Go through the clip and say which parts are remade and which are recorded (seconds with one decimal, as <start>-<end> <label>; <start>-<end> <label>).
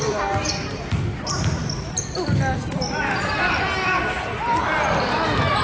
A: 0.0-5.6 recorded